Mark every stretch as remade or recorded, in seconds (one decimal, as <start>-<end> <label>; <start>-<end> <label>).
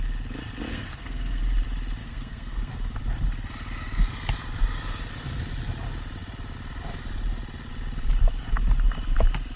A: 0.0-0.7 recorded; 0.7-1.4 remade; 1.4-2.0 recorded; 2.0-2.7 remade; 2.7-9.6 recorded